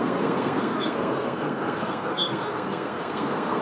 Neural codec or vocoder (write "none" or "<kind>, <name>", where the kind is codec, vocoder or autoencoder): codec, SNAC